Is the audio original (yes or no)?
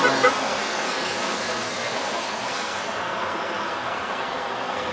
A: no